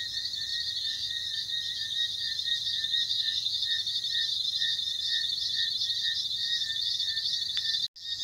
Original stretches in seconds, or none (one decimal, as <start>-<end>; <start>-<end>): 0.0-8.2